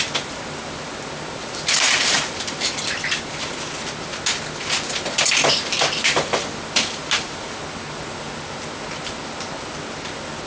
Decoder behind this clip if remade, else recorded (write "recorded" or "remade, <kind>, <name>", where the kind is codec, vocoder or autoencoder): recorded